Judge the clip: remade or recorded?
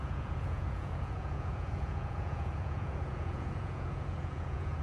remade